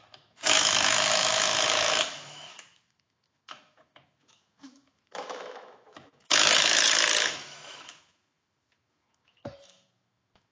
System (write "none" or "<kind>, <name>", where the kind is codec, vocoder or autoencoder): autoencoder, DAC-VAE